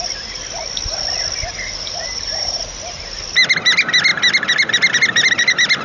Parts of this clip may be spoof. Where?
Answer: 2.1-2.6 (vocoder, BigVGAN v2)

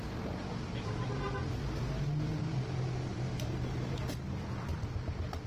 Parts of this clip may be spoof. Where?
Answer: none